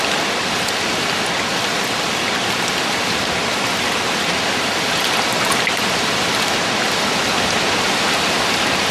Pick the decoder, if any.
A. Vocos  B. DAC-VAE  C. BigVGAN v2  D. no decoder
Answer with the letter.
D